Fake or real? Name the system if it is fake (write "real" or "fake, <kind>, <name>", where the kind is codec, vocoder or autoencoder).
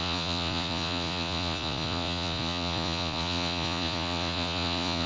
fake, vocoder, Vocos